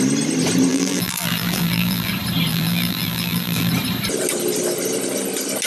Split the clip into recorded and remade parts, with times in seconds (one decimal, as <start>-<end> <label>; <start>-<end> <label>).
0.0-0.7 recorded; 0.7-2.1 remade; 2.1-2.5 recorded; 2.5-3.7 remade; 3.7-5.7 recorded